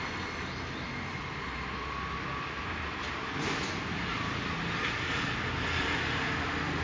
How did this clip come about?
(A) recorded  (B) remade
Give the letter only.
A